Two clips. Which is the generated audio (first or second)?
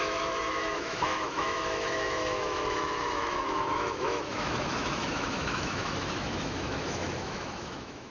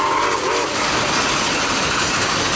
first